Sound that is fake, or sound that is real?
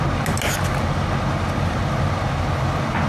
real